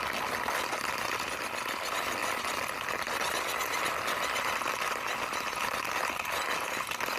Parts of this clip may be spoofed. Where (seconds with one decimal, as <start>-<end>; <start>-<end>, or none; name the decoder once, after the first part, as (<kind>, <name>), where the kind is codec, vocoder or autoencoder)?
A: none